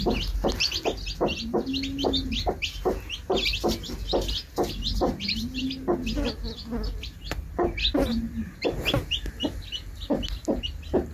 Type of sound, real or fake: real